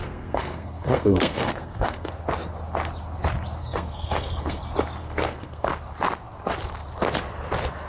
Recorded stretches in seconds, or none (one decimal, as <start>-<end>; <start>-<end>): 2.1-3.6; 4.6-5.0; 5.7-7.9